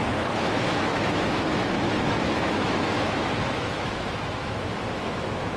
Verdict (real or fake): fake